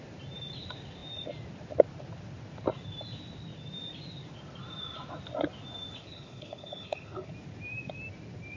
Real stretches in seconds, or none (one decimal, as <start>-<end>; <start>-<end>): 0.0-6.0; 7.3-8.6